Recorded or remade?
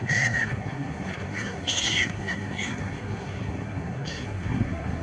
remade